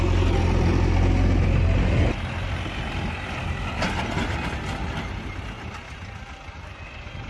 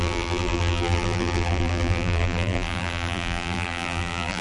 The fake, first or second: second